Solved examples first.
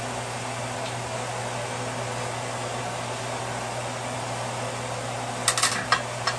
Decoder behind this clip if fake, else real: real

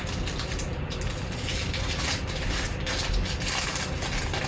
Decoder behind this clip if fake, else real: real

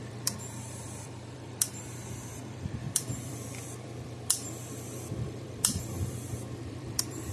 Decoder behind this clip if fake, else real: fake, vocoder, BigVGAN v2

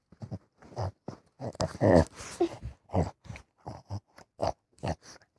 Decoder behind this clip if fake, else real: real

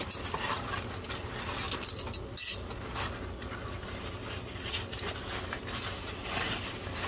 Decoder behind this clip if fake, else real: real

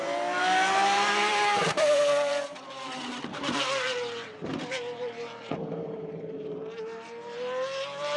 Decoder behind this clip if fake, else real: fake, vocoder, BigVGAN v2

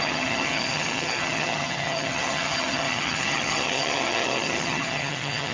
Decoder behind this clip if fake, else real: fake, vocoder, HiFi-GAN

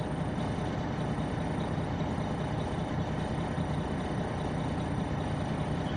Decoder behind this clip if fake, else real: real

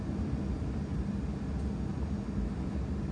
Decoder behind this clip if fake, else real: real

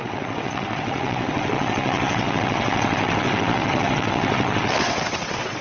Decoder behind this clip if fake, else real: fake, vocoder, WaveNeXt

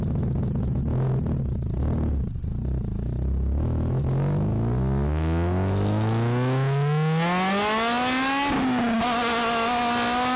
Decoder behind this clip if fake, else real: real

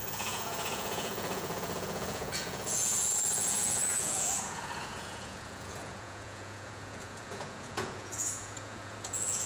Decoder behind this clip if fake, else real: fake, vocoder, Vocos